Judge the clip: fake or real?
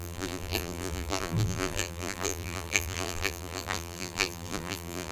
fake